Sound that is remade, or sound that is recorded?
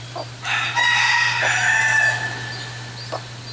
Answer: recorded